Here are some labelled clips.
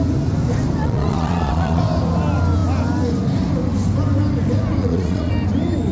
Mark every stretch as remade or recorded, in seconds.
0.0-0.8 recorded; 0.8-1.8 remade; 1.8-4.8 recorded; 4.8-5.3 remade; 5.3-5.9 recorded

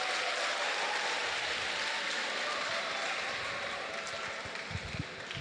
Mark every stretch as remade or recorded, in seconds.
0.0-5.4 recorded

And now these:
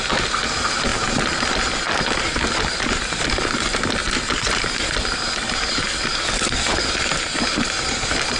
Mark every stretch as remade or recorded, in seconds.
0.0-8.4 recorded

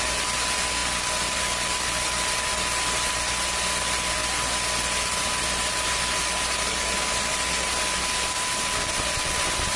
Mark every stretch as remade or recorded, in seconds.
0.0-9.8 recorded

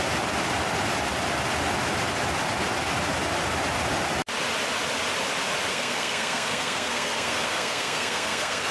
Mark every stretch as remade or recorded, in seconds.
0.0-5.7 recorded; 5.7-8.7 remade

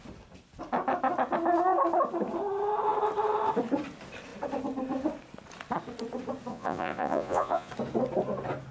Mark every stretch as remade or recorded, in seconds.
0.0-6.5 recorded; 6.5-7.7 remade; 7.7-8.7 recorded

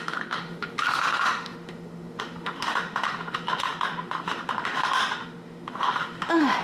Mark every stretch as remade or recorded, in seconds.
0.0-6.6 remade

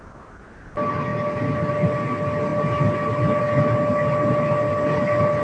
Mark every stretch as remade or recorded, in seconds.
0.0-5.4 recorded